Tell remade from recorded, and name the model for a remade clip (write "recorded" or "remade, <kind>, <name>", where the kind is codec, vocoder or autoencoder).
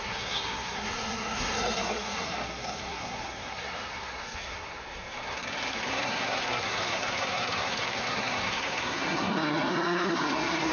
remade, codec, SNAC